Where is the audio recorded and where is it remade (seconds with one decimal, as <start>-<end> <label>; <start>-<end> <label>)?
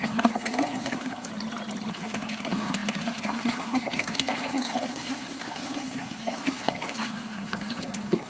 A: 0.0-1.3 remade; 1.3-1.9 recorded; 1.9-8.3 remade